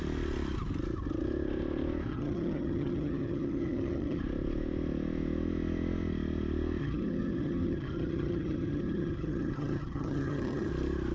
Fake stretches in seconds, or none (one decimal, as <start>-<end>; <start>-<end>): 2.1-4.2; 6.8-10.7